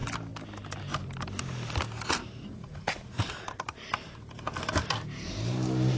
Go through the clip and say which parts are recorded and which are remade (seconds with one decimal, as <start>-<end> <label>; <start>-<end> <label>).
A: 0.0-2.2 recorded; 2.2-3.3 remade; 3.3-6.0 recorded